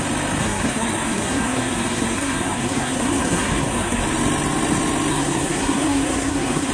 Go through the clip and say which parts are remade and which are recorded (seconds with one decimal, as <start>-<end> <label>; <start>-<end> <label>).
0.0-0.4 recorded; 0.4-4.0 remade; 4.0-5.1 recorded; 5.1-6.7 remade